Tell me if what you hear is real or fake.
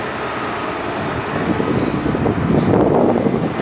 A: real